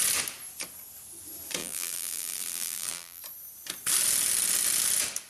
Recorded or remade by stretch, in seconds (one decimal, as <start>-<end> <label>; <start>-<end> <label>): 0.0-1.6 recorded; 1.6-3.2 remade; 3.2-5.3 recorded